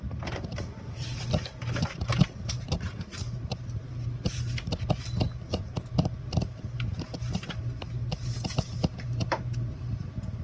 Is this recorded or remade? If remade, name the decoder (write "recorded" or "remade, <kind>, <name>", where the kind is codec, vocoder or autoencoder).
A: recorded